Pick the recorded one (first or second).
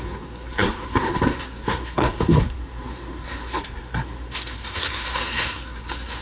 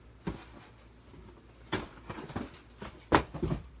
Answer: second